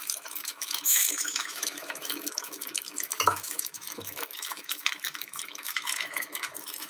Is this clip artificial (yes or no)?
yes